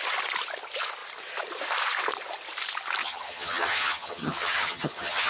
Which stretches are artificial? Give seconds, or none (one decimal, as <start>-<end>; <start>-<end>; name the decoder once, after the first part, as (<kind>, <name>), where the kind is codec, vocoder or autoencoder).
3.0-5.3 (vocoder, HiFi-GAN)